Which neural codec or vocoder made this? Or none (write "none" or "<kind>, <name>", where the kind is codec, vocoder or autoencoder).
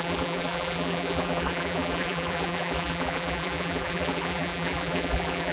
vocoder, BigVGAN v2